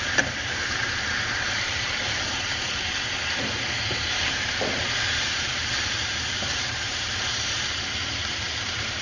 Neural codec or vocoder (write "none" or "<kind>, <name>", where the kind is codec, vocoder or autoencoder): vocoder, BigVGAN v2